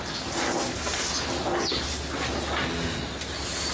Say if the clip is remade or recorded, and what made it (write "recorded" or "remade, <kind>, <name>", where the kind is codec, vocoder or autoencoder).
recorded